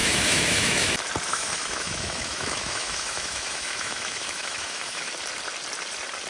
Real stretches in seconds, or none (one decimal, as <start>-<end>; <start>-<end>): 0.9-1.3; 5.1-6.3